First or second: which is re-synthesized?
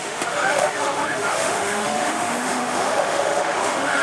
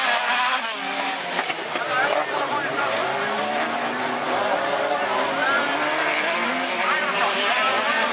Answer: first